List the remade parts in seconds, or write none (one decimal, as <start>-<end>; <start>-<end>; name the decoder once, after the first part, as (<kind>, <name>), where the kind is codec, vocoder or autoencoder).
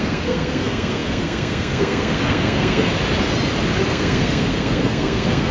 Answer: 0.0-2.9 (codec, SNAC); 3.9-5.5